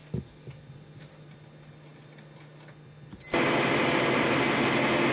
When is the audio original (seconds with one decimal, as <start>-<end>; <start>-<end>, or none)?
0.0-5.1

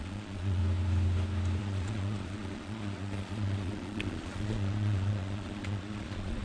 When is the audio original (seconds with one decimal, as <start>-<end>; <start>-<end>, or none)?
0.6-1.6

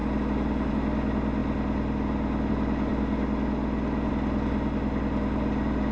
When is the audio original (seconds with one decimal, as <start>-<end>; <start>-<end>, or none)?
0.0-5.9

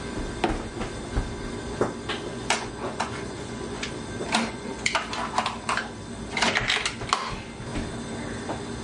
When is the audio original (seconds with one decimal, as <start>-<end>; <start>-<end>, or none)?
0.0-2.3; 3.9-4.5; 5.0-8.8

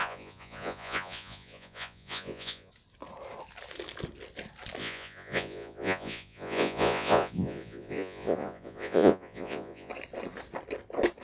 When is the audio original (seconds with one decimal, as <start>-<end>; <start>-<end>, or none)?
2.7-4.8; 9.9-11.2

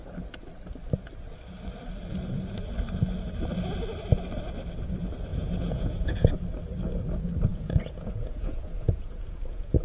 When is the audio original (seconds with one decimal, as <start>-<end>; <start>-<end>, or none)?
0.0-5.3; 6.3-7.5